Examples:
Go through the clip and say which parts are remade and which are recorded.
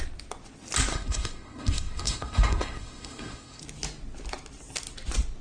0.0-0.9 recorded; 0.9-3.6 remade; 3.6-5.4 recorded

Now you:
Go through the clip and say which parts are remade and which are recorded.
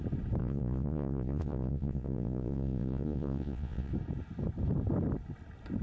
0.0-0.4 recorded; 0.4-3.9 remade; 3.9-5.8 recorded